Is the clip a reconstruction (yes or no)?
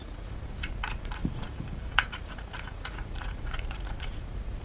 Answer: yes